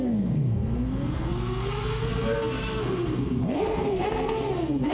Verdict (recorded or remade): remade